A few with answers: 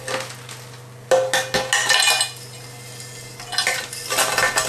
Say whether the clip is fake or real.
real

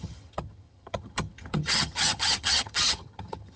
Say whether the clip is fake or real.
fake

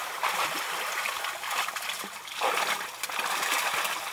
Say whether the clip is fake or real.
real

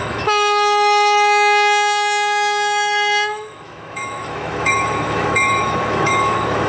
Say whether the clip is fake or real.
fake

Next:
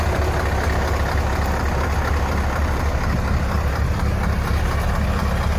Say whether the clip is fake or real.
real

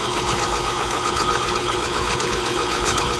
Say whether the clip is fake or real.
fake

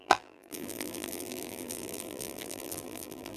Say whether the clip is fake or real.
fake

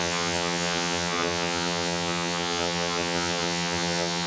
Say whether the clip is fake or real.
fake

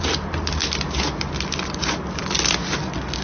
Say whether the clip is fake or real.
real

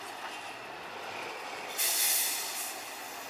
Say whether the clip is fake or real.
real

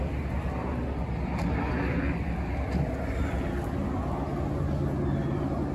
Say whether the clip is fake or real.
real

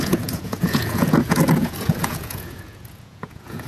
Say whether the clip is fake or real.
fake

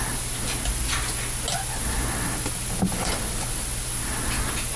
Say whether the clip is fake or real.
real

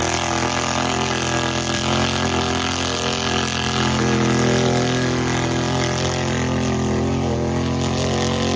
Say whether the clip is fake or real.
real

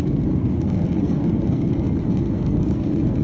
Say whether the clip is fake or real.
fake